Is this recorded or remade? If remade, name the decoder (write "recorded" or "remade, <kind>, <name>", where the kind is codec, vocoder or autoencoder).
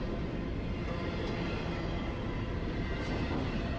recorded